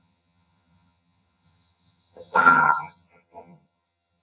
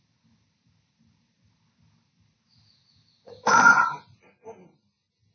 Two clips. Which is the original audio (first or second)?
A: second